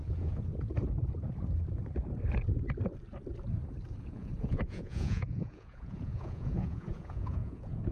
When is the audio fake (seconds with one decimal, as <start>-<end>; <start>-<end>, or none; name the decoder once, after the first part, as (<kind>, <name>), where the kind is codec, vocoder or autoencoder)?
0.0-0.5 (vocoder, Vocos); 4.0-7.9